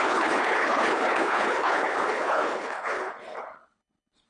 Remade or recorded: remade